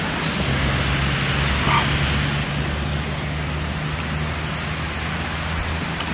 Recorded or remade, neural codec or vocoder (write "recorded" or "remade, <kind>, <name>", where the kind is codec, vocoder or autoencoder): recorded